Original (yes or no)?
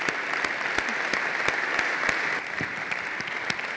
yes